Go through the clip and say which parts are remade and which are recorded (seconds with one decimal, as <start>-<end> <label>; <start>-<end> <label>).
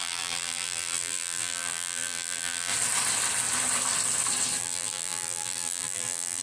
0.0-2.7 remade; 2.7-4.6 recorded; 4.6-6.4 remade